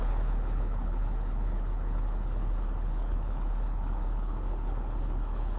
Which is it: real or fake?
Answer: fake